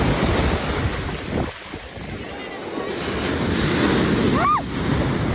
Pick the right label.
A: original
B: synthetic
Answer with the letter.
A